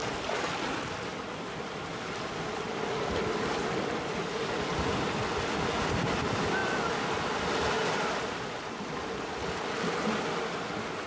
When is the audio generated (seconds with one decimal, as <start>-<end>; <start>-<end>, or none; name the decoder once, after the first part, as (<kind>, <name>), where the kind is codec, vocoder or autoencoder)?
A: 0.0-11.1 (vocoder, BigVGAN v2)